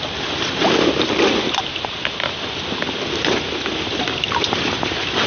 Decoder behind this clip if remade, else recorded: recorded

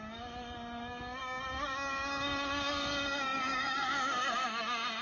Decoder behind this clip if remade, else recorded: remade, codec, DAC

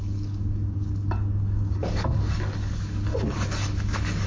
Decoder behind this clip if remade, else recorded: remade, codec, DAC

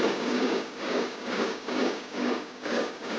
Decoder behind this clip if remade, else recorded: remade, codec, DAC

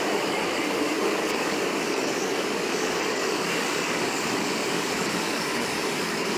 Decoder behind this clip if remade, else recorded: remade, codec, DAC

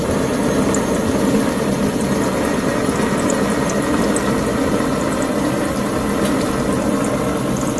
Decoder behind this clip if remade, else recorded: recorded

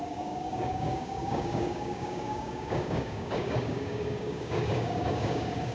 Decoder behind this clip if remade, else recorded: remade, codec, DAC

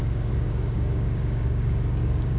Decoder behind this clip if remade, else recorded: remade, codec, DAC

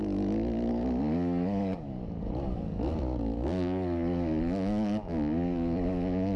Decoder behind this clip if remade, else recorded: remade, codec, DAC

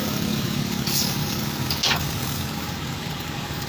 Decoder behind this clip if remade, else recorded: remade, codec, DAC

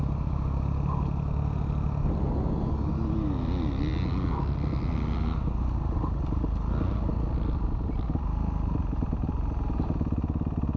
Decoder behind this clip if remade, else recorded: recorded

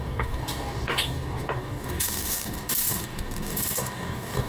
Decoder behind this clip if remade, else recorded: remade, codec, DAC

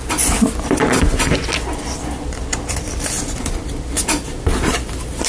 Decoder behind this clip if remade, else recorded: recorded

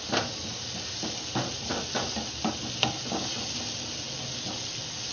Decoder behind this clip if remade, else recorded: recorded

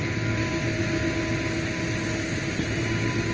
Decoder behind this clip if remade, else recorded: recorded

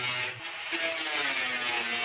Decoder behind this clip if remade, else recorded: recorded